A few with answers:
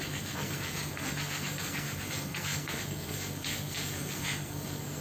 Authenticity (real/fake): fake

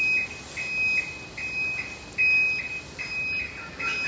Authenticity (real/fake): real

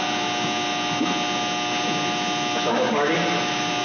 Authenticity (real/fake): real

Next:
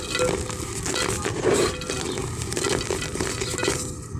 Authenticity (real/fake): real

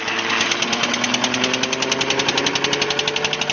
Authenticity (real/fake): real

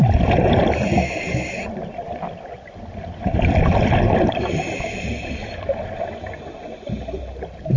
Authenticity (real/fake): fake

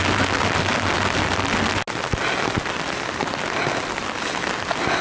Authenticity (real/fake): real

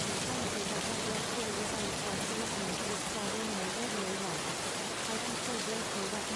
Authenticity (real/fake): real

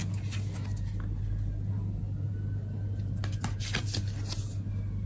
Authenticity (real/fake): real